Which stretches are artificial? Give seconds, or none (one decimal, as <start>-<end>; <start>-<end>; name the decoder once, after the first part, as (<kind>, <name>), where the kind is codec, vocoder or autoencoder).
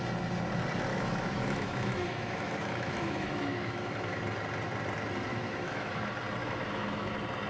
0.9-4.2 (autoencoder, DAC-VAE); 5.3-6.0; 6.4-7.1